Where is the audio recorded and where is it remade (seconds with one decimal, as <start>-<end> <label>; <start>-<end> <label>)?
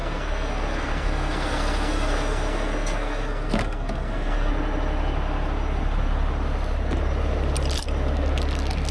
0.0-4.5 remade; 4.5-8.9 recorded